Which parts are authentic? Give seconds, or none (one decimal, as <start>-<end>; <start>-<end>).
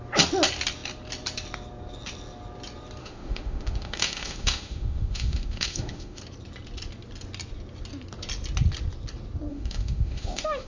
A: 0.0-3.0; 6.2-9.5